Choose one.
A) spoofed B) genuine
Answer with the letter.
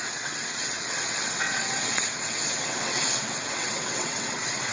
A